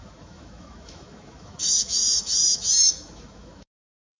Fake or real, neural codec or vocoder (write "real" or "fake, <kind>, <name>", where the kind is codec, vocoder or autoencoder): fake, autoencoder, DAC-VAE